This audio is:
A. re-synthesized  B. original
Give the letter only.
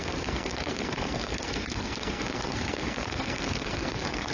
A